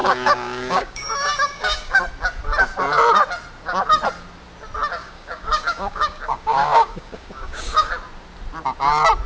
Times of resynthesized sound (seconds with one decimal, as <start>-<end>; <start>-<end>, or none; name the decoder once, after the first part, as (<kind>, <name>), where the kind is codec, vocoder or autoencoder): 0.0-2.0 (codec, DAC); 5.0-7.9